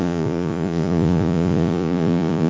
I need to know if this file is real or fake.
fake